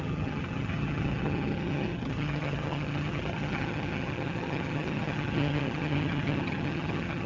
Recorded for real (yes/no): no